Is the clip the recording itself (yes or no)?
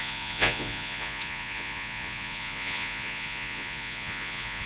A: no